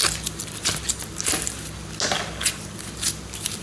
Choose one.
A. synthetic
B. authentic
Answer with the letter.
B